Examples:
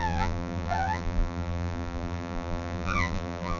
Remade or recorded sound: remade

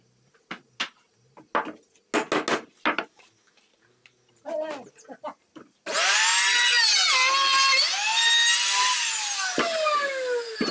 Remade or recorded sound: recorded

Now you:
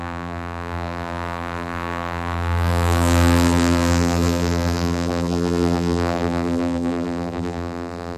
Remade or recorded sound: remade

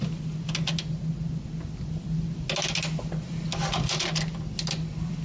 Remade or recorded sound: recorded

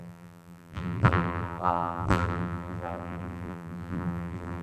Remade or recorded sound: remade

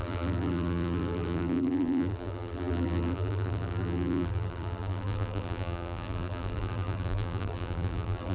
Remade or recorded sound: remade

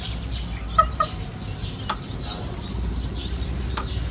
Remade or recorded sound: recorded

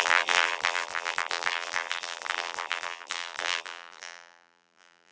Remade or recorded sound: remade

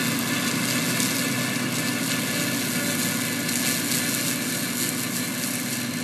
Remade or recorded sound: recorded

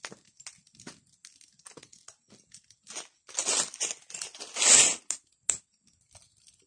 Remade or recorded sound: recorded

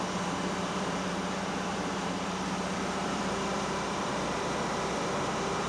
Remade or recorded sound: remade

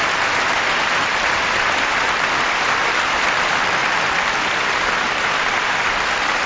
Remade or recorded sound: remade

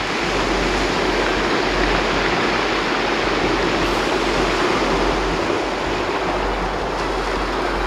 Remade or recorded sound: recorded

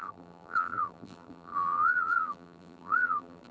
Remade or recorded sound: remade